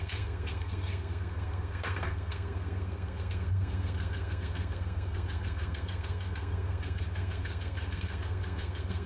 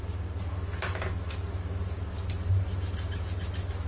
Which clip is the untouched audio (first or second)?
second